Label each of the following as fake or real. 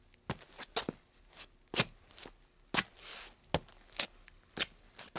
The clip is real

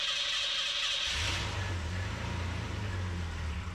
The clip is real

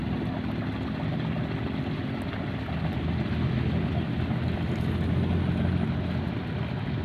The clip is real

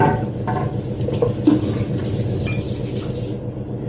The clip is real